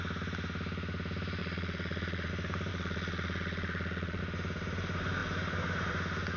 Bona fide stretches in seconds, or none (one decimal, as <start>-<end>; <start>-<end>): 0.0-1.4; 2.3-2.7; 4.2-6.4